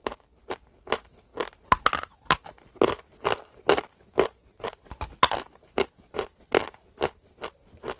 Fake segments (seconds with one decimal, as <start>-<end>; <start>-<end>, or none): none